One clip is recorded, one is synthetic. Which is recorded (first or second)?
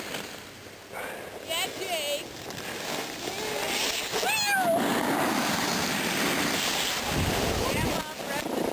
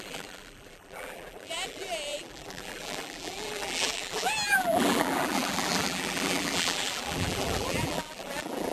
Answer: first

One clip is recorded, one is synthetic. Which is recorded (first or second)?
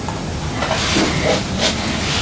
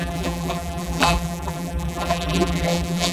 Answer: first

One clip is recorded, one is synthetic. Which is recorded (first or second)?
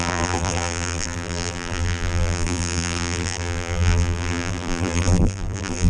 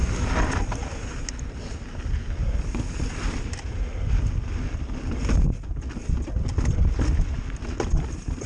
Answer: second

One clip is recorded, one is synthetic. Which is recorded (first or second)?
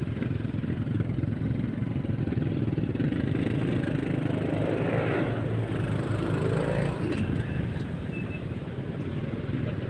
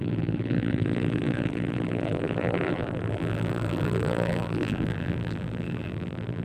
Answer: first